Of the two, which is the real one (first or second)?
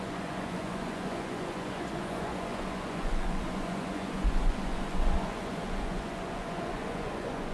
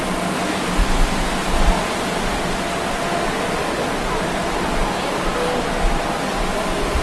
second